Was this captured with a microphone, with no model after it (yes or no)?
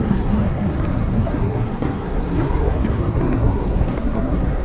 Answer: no